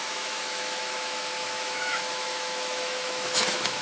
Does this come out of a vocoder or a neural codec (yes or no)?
yes